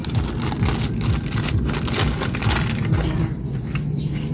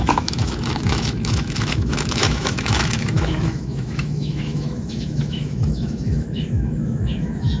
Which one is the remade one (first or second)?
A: second